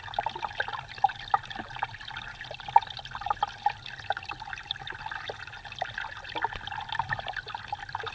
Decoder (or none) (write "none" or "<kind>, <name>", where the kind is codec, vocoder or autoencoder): none